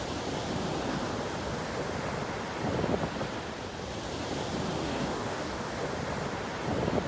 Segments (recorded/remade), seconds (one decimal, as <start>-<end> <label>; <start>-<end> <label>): 0.0-4.8 recorded; 4.8-5.7 remade; 5.7-7.1 recorded